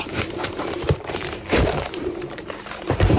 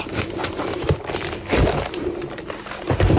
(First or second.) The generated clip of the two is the first